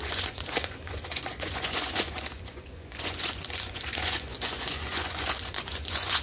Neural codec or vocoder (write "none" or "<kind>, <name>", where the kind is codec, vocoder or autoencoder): vocoder, Vocos